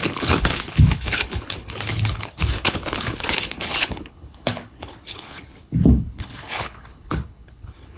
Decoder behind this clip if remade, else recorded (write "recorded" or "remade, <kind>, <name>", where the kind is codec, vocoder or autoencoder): remade, codec, HILCodec